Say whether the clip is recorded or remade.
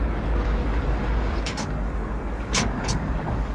remade